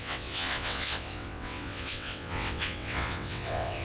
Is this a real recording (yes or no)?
no